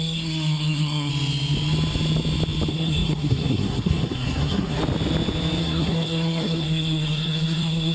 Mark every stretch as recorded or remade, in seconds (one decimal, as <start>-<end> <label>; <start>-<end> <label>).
0.0-1.1 remade; 1.1-2.7 recorded; 2.7-4.8 remade; 4.8-5.6 recorded; 5.6-7.9 remade